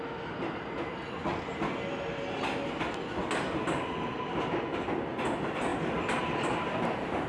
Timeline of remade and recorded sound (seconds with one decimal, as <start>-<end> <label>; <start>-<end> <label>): 0.0-7.3 recorded